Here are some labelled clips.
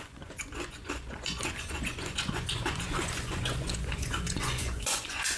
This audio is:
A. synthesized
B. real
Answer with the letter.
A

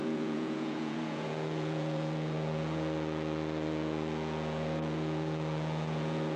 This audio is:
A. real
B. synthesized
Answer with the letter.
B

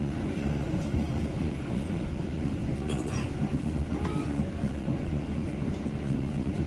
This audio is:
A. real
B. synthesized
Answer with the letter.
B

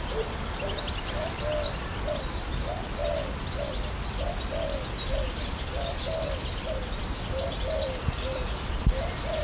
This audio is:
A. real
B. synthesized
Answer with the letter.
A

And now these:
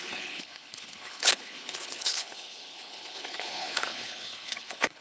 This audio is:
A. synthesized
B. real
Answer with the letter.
A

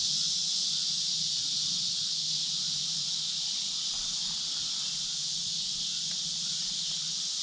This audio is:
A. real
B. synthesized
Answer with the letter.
A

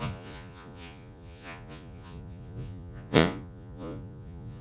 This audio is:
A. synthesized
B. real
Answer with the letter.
A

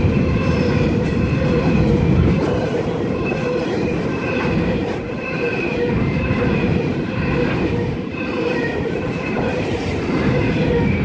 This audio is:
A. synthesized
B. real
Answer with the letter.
A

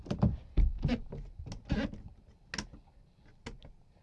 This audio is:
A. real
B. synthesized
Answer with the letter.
A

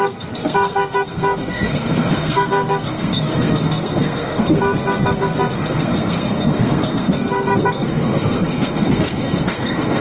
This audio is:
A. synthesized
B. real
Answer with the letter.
A